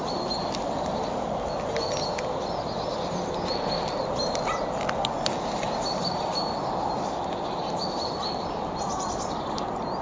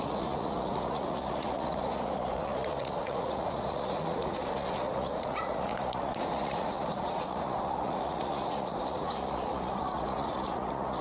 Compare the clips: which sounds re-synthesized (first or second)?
second